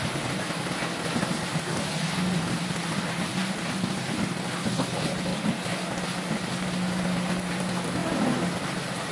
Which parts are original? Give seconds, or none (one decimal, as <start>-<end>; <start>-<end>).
0.0-9.1